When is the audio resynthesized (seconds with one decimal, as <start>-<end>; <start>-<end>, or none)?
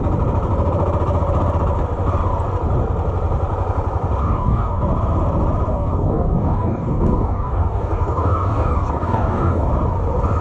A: 4.2-4.8; 5.7-9.7